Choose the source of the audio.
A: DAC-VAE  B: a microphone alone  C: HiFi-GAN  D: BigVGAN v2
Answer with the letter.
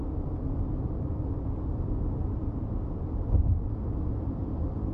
B